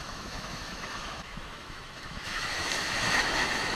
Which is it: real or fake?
fake